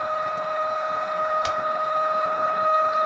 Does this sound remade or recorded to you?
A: remade